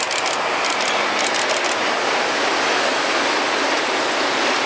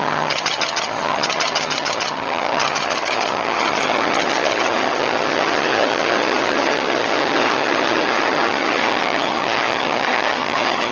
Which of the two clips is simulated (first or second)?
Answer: second